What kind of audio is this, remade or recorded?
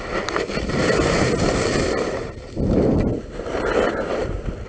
recorded